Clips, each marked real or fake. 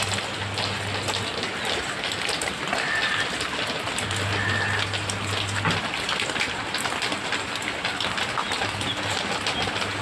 real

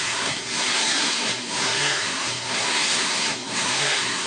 fake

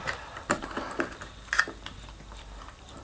fake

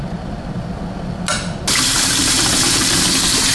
real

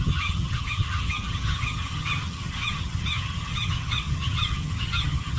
fake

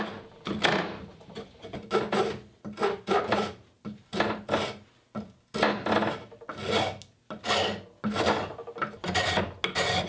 real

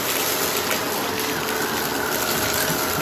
real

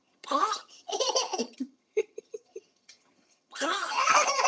fake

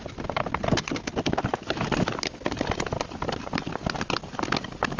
real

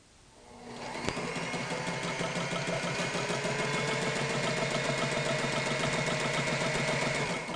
real